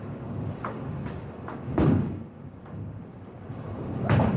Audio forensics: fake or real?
fake